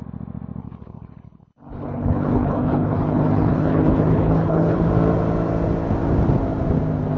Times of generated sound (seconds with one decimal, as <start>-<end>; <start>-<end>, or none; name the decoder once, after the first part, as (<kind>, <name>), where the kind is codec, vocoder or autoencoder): 0.6-4.9 (codec, HILCodec)